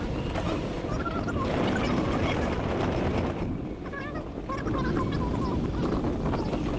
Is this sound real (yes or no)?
yes